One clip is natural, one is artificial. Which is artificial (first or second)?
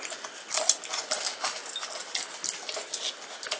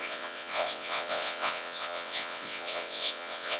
second